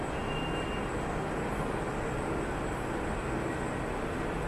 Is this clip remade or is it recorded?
recorded